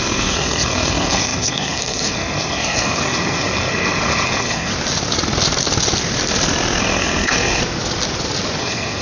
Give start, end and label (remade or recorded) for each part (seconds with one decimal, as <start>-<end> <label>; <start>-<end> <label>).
0.0-4.7 remade; 4.7-6.8 recorded; 6.8-7.6 remade; 7.6-8.6 recorded; 8.6-9.0 remade